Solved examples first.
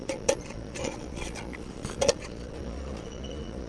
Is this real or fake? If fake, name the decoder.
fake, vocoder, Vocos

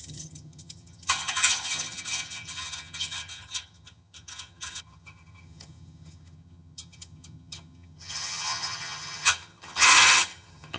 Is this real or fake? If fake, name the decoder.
fake, vocoder, HiFi-GAN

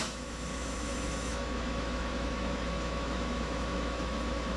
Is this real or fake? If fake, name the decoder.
fake, autoencoder, DAC-VAE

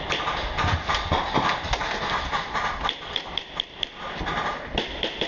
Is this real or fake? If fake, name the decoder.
real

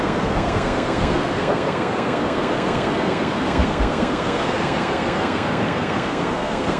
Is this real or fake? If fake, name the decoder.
fake, codec, SNAC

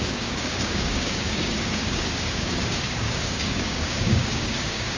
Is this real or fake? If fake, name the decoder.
fake, codec, DAC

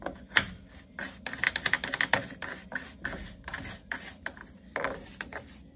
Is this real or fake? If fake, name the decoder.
real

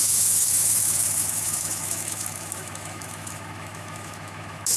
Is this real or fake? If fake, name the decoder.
fake, autoencoder, DAC-VAE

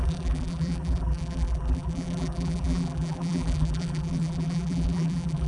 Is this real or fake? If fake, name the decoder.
fake, vocoder, BigVGAN v2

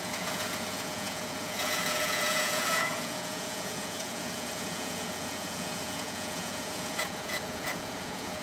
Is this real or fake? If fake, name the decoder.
fake, vocoder, Vocos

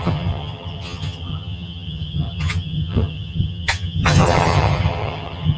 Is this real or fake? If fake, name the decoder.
fake, vocoder, HiFi-GAN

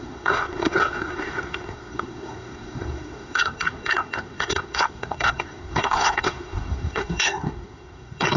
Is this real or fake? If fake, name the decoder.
fake, codec, SNAC